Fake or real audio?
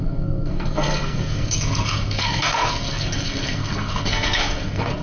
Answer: fake